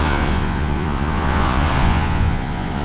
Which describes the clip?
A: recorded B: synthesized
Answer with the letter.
B